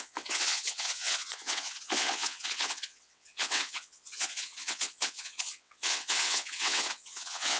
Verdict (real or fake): fake